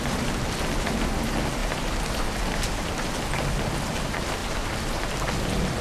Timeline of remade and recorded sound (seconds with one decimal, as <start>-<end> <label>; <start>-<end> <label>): 0.0-1.6 recorded; 1.6-3.1 remade; 3.1-4.4 recorded; 4.4-5.3 remade; 5.3-5.8 recorded